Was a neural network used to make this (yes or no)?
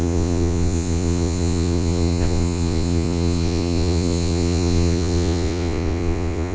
yes